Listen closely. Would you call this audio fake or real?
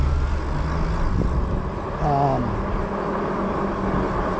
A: real